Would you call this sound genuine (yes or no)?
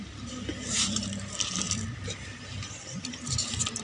yes